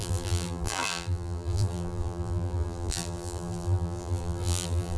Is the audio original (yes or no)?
no